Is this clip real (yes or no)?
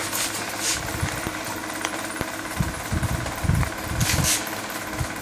yes